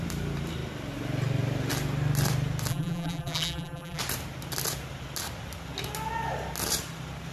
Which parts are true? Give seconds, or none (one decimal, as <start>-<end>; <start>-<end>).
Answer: 0.0-2.7; 4.0-7.3